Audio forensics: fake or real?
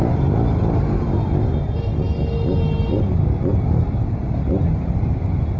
real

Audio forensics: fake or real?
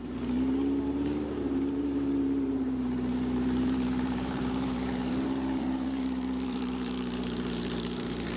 fake